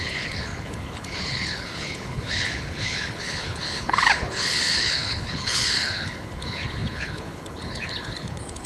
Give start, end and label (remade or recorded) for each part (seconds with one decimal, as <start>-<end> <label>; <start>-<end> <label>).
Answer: 0.0-8.7 remade